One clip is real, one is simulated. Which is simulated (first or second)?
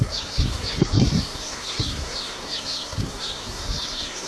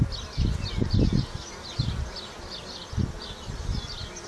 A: first